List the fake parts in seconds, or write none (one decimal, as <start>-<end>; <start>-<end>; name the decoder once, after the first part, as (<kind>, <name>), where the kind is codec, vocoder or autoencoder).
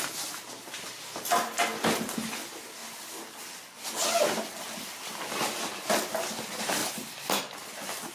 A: none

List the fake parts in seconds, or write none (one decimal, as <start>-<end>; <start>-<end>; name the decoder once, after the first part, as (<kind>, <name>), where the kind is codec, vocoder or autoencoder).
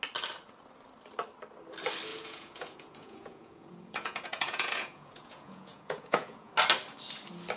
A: 2.1-6.5 (vocoder, Vocos)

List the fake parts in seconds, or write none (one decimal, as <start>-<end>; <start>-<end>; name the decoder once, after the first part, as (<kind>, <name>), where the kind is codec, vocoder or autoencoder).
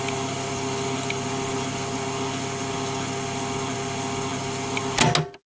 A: none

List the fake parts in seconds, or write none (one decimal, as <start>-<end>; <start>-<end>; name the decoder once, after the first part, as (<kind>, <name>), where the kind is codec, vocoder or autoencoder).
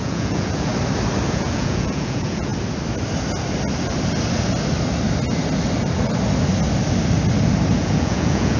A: 0.0-0.7 (vocoder, Vocos); 1.3-2.5; 7.7-8.6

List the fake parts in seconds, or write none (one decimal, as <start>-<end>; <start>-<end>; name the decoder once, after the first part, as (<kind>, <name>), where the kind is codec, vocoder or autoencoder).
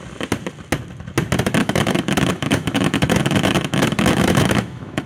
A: 1.6-5.1 (autoencoder, DAC-VAE)